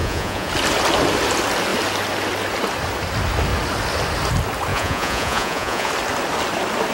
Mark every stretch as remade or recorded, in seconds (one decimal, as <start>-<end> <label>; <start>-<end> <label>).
0.0-0.5 remade; 0.5-4.7 recorded; 4.7-5.9 remade; 5.9-6.9 recorded